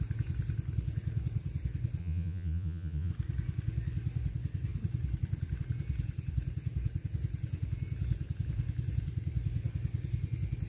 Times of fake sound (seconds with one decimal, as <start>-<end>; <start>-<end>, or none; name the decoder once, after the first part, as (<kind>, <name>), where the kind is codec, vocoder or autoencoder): 2.0-3.1 (vocoder, Vocos)